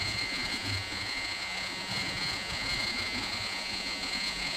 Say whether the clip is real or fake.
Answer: fake